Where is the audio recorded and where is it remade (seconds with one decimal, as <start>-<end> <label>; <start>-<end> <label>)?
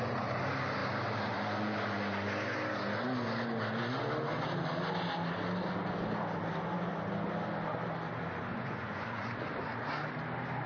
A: 0.0-8.5 recorded; 8.5-9.3 remade; 9.3-10.7 recorded